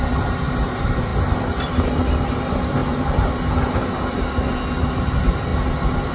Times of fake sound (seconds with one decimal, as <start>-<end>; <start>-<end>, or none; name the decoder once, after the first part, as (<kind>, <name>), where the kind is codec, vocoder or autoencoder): none